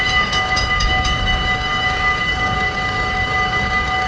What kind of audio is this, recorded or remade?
remade